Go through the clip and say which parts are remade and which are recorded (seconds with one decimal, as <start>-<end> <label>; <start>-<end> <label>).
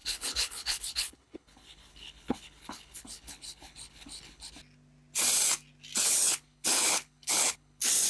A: 0.0-4.5 remade; 4.5-6.0 recorded; 6.0-8.1 remade